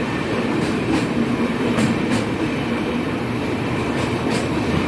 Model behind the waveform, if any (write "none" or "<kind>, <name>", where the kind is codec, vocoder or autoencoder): vocoder, BigVGAN v2